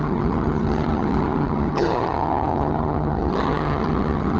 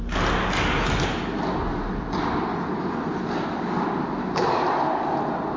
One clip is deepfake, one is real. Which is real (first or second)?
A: second